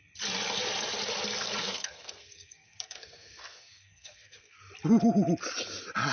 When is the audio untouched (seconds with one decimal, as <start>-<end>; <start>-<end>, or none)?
0.0-1.6; 4.6-6.1

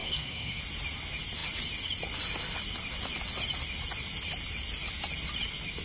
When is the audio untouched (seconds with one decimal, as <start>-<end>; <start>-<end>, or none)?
0.6-5.8

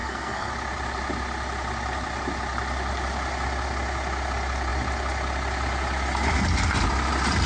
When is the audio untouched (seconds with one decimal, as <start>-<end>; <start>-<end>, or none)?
0.5-7.5